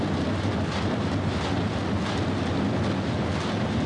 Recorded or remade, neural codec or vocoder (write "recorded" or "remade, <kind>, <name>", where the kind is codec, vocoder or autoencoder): recorded